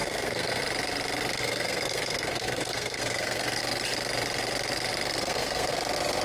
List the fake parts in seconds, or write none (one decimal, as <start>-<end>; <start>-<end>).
0.0-0.6; 1.4-3.6; 5.2-5.7